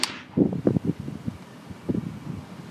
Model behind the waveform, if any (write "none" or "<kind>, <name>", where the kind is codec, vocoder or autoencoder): none